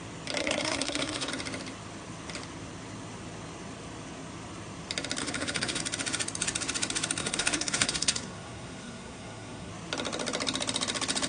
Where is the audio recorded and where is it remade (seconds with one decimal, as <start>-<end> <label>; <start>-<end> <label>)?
0.0-0.4 recorded; 0.4-1.3 remade; 1.3-5.2 recorded; 5.2-5.8 remade; 5.8-7.2 recorded; 7.2-9.7 remade; 9.7-11.3 recorded